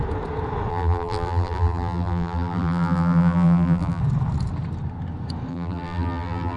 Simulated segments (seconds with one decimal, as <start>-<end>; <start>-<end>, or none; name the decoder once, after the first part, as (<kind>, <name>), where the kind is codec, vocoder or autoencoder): 0.7-4.0 (vocoder, BigVGAN v2); 5.5-6.6